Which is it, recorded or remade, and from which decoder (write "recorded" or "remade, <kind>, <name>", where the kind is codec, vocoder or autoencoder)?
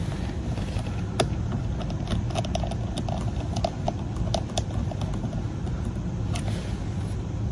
recorded